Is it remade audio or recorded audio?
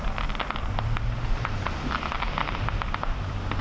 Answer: recorded